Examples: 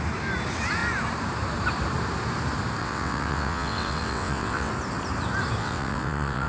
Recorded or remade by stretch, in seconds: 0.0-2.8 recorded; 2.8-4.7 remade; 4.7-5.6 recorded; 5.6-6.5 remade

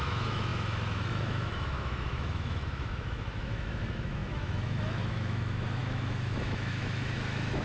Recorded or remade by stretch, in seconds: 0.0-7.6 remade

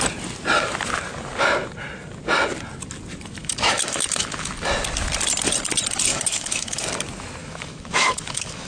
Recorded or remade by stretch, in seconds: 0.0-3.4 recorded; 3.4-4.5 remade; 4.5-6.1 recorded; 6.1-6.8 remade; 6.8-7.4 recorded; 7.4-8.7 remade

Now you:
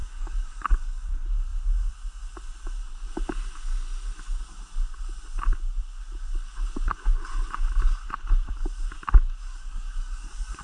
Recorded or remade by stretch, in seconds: 0.0-1.1 remade; 1.1-9.5 recorded; 9.5-10.6 remade